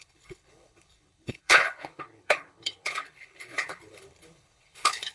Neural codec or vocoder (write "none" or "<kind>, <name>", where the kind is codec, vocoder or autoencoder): codec, HILCodec